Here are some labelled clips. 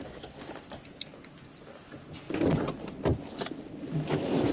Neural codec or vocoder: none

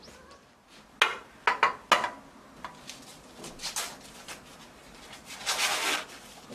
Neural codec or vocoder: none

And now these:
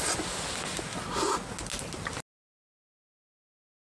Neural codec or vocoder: none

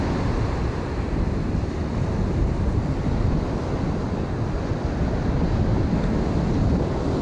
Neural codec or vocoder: none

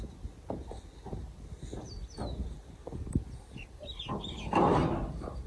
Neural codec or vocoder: none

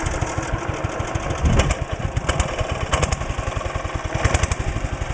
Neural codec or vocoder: none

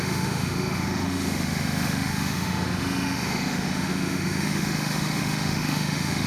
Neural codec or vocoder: autoencoder, DAC-VAE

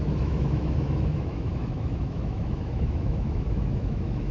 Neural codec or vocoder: autoencoder, DAC-VAE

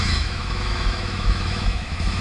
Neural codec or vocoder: autoencoder, DAC-VAE